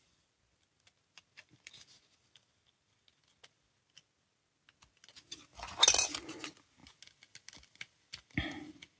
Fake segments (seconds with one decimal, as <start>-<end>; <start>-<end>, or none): none